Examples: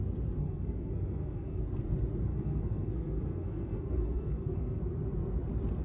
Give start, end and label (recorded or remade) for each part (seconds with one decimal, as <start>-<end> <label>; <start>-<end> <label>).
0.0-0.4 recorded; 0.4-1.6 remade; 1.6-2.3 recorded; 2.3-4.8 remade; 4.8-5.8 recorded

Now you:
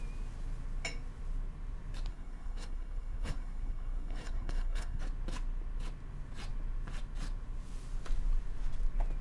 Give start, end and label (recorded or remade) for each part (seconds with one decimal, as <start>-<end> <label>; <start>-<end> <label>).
0.0-2.1 recorded; 2.1-5.0 remade; 5.0-9.2 recorded

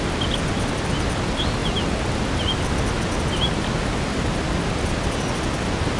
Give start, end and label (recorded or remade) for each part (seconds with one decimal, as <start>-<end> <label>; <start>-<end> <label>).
0.0-6.0 recorded

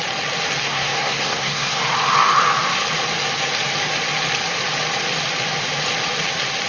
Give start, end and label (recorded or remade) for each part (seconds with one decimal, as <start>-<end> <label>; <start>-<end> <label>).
0.0-0.6 recorded; 0.6-1.8 remade; 1.8-6.7 recorded